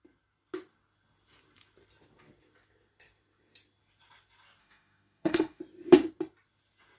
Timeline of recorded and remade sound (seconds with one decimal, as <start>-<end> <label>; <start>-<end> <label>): 0.0-4.6 recorded; 4.6-5.6 remade; 5.6-7.0 recorded